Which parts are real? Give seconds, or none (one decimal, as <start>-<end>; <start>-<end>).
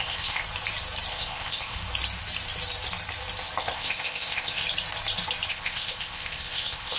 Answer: 0.4-1.1; 1.8-3.6; 4.6-5.5